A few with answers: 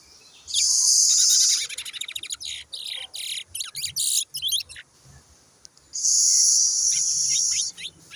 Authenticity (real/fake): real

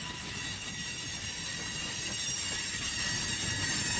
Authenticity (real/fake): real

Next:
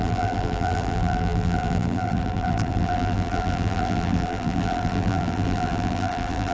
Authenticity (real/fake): fake